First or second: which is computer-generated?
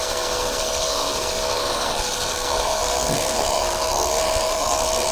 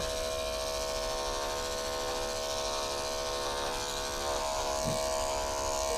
first